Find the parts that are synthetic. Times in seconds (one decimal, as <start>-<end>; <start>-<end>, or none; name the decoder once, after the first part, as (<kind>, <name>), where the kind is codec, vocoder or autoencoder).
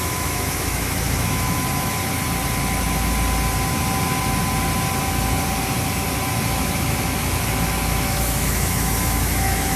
0.0-2.0 (autoencoder, DAC-VAE); 6.5-9.8